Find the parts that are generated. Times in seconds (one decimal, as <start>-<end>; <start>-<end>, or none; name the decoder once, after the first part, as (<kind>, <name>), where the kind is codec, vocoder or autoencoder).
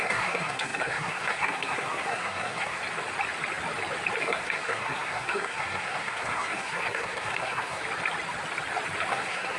0.0-2.8 (codec, SNAC); 4.2-7.8; 9.1-9.6